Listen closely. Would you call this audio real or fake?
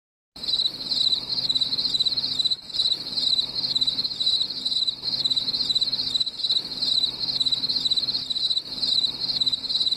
real